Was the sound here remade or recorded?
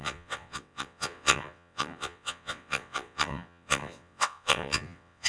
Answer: remade